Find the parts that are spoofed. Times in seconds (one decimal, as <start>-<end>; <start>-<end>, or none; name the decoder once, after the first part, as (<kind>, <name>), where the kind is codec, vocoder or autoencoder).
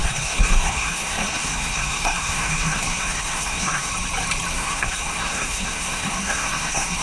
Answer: 0.0-3.9 (codec, SNAC); 4.5-7.0